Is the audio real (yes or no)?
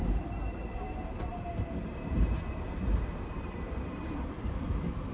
no